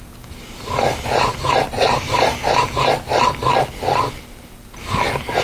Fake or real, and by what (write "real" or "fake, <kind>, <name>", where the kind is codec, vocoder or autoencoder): real